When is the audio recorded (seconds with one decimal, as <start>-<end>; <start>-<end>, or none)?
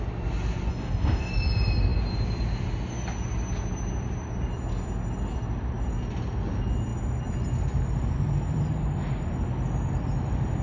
0.0-0.7; 1.3-10.6